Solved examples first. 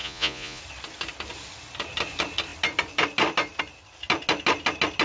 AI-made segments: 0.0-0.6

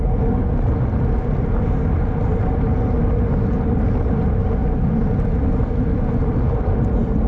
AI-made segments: none

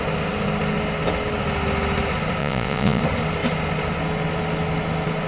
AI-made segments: 2.4-3.0

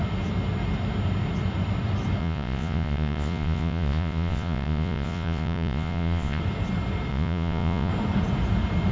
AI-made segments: 2.2-6.4; 7.1-7.9

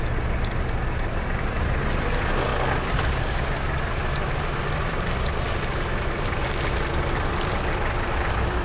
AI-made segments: none

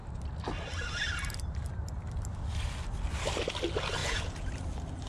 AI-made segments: 4.0-4.5